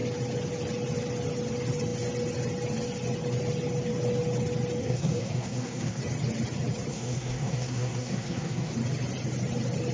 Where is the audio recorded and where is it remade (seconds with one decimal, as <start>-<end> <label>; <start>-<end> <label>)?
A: 0.0-4.8 recorded; 4.8-6.0 remade; 6.0-6.9 recorded; 6.9-8.7 remade; 8.7-9.9 recorded